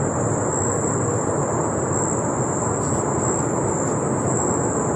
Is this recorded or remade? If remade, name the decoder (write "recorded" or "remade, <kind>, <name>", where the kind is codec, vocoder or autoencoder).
recorded